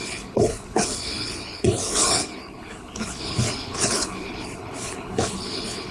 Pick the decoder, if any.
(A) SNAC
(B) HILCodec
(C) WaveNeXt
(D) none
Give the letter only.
B